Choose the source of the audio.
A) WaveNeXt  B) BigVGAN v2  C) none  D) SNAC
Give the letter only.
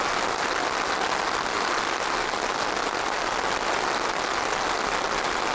C